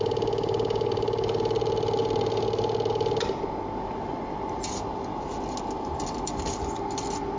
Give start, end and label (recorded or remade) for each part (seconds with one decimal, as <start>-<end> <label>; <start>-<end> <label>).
0.0-7.4 recorded